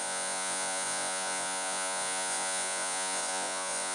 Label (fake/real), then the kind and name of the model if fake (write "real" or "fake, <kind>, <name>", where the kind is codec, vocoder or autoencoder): fake, vocoder, Vocos